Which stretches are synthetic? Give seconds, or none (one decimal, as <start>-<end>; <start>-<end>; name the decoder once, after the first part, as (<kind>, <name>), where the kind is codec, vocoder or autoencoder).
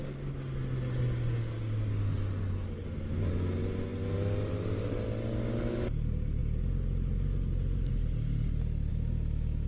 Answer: 8.9-9.7 (autoencoder, DAC-VAE)